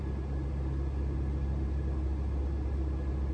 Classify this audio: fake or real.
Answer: real